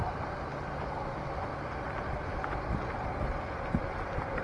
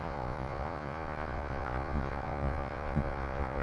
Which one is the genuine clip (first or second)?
first